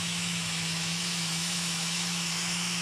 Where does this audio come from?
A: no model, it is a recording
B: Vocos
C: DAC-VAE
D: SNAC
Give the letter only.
C